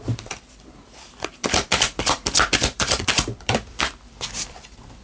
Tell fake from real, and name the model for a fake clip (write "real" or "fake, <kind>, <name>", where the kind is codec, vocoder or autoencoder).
fake, vocoder, BigVGAN v2